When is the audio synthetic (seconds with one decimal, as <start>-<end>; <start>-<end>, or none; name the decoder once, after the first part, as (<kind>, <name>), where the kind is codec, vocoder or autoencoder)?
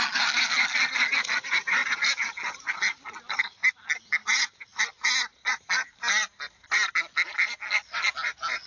none